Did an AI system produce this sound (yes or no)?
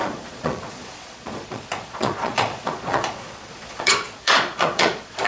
yes